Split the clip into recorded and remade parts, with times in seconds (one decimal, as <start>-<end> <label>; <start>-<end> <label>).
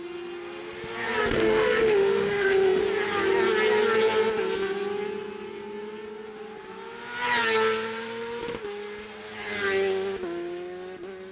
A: 0.0-1.4 recorded; 1.4-2.8 remade; 2.8-11.3 recorded